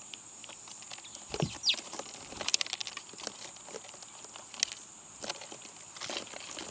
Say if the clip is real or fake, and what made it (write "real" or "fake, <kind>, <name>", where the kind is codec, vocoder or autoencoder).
real